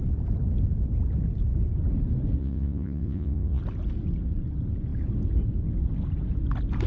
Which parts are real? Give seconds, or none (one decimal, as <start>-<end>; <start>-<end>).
0.0-2.4; 3.6-6.9